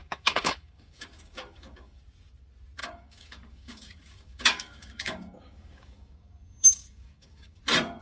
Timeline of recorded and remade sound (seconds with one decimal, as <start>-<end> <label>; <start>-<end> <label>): 0.0-2.0 remade; 2.0-2.8 recorded; 2.8-7.6 remade; 7.6-8.0 recorded